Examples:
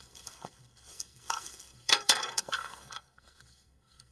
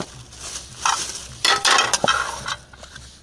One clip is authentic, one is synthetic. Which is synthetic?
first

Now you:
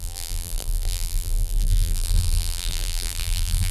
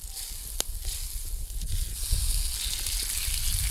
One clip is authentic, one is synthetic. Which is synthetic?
first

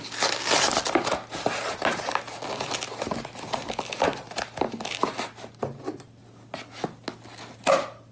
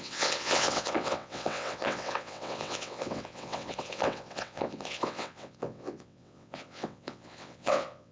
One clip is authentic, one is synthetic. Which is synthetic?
second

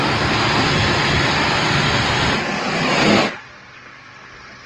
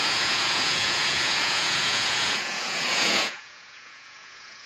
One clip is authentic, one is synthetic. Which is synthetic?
second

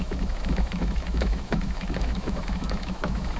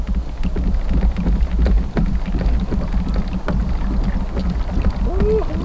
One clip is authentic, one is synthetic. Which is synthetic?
first